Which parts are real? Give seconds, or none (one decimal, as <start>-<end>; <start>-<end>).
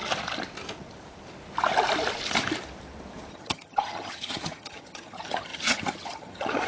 0.0-3.3